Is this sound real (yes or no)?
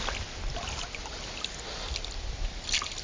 yes